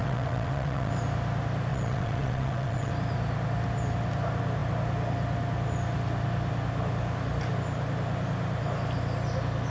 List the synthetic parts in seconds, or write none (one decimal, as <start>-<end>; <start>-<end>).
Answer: 0.0-0.9; 1.7-2.9